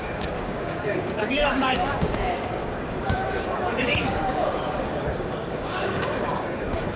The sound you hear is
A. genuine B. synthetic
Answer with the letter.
B